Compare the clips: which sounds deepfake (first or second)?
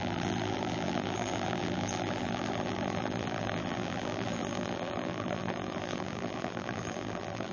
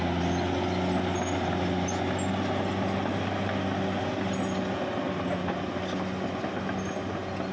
first